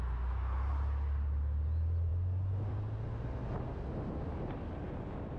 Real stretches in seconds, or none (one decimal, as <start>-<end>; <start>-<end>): 0.0-5.4